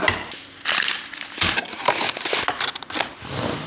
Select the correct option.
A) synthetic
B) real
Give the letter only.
B